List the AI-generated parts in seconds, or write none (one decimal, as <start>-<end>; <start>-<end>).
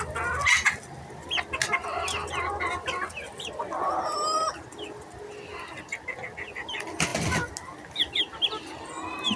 none